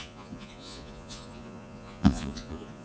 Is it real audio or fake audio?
fake